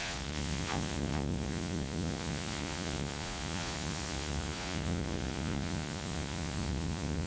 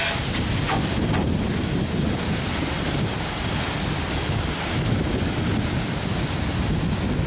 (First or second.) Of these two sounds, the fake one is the first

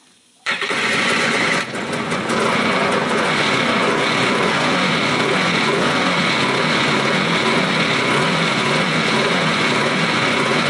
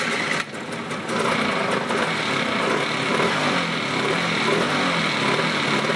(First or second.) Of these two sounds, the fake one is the first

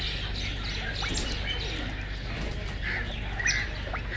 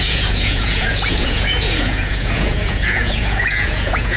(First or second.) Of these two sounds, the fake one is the second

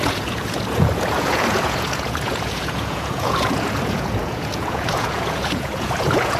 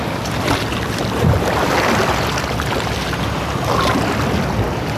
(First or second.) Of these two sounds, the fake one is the first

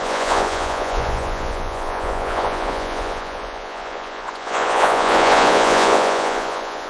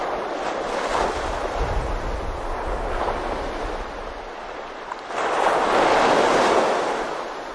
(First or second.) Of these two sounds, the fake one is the first